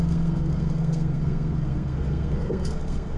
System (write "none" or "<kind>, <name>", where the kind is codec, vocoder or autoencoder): codec, SNAC